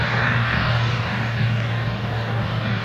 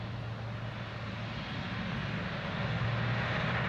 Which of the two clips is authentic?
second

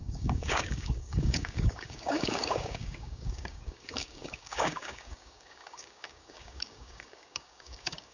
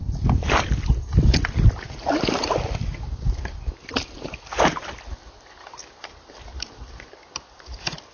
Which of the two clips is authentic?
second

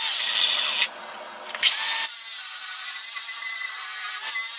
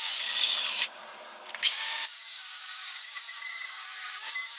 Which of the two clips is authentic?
first